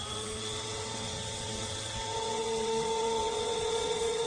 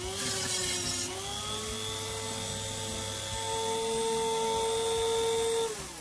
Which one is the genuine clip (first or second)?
second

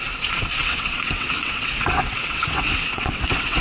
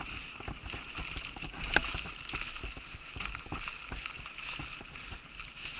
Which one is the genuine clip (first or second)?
second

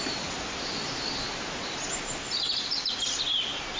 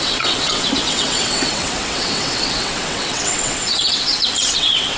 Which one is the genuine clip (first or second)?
first